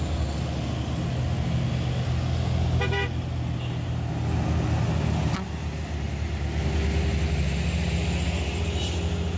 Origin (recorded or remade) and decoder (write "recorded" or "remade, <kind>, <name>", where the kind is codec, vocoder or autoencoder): recorded